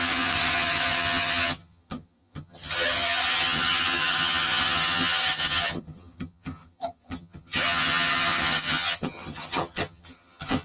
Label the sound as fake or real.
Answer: fake